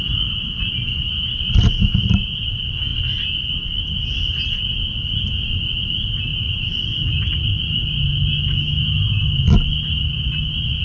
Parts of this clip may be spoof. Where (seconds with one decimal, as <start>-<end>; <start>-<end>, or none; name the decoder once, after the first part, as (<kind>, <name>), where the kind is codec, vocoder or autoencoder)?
none